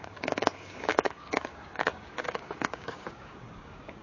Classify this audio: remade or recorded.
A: remade